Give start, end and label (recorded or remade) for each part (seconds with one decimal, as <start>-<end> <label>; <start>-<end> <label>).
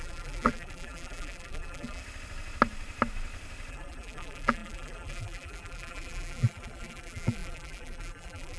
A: 0.0-2.0 remade; 2.0-3.7 recorded; 3.7-8.6 remade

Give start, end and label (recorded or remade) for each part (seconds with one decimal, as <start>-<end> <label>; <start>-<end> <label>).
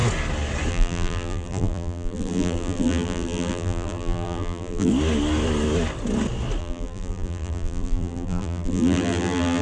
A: 0.0-0.7 recorded; 0.7-4.9 remade; 4.9-6.6 recorded; 6.6-9.6 remade